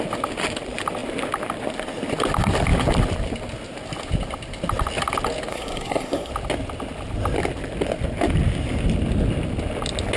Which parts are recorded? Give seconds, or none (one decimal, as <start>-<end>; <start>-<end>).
0.0-5.5; 6.3-10.2